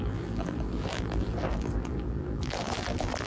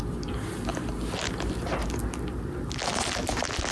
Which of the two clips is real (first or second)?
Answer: second